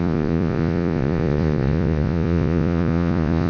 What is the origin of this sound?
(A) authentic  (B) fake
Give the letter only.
B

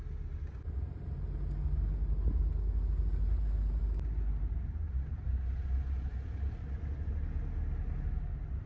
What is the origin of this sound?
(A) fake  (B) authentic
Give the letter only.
B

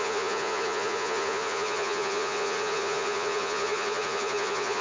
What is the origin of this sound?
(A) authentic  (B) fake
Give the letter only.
B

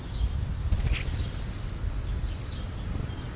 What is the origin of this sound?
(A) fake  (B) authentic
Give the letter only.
B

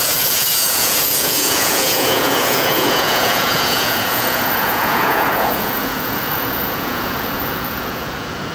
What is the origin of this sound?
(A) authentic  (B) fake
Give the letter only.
B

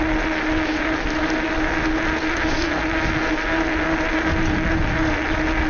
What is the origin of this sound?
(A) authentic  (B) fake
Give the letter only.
A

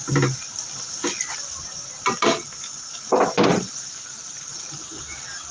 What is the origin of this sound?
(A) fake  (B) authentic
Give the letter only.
B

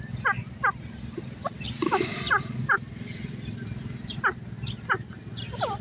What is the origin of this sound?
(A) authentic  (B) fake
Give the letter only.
A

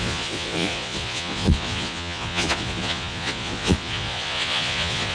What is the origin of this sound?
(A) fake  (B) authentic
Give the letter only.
A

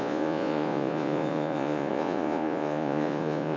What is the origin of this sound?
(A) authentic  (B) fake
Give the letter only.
B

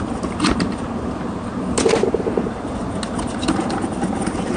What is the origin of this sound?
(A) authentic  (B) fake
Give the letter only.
A